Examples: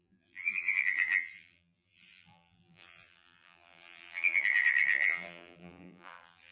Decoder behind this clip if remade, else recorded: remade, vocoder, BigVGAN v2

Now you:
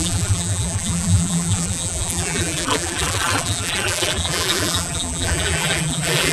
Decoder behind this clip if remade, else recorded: remade, vocoder, BigVGAN v2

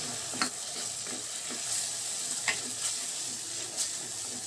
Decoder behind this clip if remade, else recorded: recorded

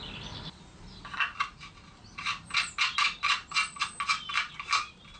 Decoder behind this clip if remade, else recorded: recorded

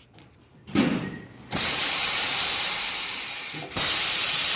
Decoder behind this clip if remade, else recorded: remade, vocoder, BigVGAN v2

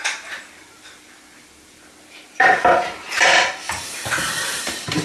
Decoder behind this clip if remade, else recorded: remade, vocoder, BigVGAN v2